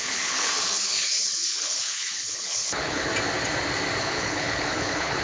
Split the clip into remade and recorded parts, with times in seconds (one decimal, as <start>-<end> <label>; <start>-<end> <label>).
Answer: 0.0-3.1 remade; 3.1-4.0 recorded; 4.0-5.2 remade